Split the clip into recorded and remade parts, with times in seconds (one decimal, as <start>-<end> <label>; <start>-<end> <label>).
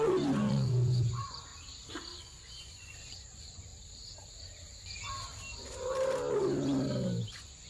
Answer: 0.0-1.5 remade; 1.5-2.2 recorded; 2.2-3.7 remade; 3.7-7.3 recorded; 7.3-7.7 remade